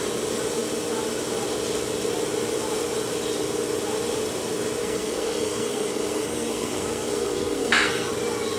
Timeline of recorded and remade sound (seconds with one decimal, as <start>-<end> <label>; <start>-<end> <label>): 0.0-4.8 recorded; 4.8-8.1 remade; 8.1-8.6 recorded